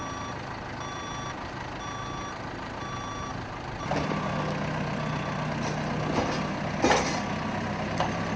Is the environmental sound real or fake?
real